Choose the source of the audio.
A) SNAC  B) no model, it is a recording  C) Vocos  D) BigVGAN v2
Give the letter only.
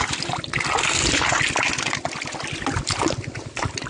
B